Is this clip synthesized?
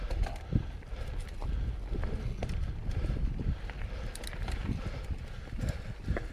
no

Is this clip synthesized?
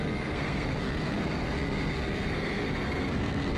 yes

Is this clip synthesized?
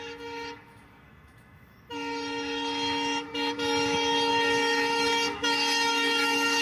yes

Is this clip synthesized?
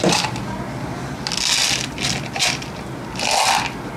no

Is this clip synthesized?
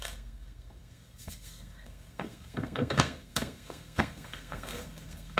yes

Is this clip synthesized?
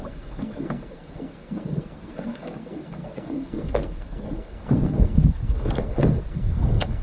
yes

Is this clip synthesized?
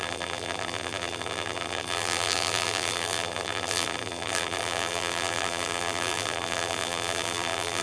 yes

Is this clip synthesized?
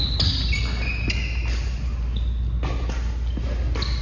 no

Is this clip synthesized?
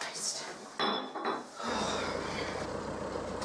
no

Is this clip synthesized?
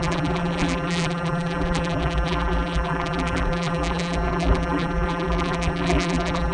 yes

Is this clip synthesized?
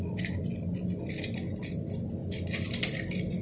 no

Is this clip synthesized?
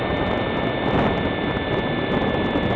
no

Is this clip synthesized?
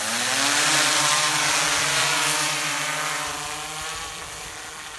yes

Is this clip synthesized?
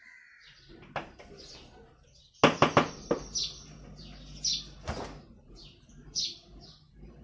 no